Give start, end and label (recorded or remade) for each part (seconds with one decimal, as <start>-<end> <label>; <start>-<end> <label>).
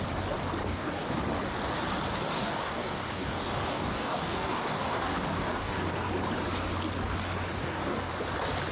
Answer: 0.0-0.6 recorded; 0.6-1.2 remade; 1.2-2.3 recorded; 2.3-6.1 remade; 6.1-7.6 recorded; 7.6-8.1 remade; 8.1-8.7 recorded